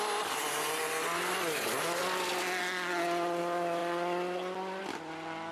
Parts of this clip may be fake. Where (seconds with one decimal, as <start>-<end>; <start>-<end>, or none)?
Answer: none